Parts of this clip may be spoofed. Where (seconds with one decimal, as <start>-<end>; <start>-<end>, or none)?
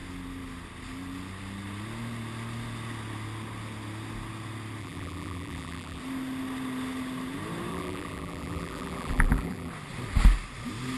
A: 4.8-6.0; 7.7-9.7